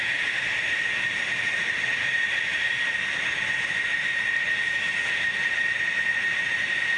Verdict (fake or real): real